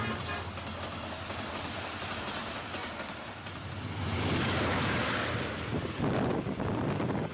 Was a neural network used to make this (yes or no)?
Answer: no